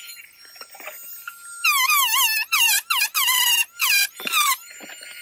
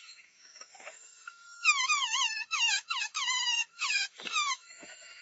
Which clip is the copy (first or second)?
second